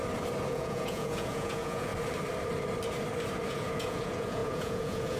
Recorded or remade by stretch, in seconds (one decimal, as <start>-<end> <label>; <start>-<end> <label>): 0.0-0.5 recorded; 0.5-1.9 remade; 1.9-3.5 recorded; 3.5-5.2 remade